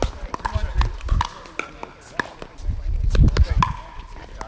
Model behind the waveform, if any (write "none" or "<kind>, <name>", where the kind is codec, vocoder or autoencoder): none